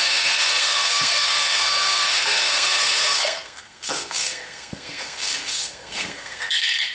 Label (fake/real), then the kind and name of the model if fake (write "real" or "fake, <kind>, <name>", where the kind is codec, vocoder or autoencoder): fake, codec, SNAC